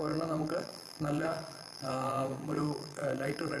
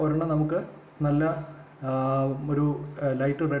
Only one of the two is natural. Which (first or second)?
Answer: second